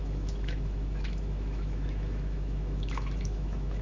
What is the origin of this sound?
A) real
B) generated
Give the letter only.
B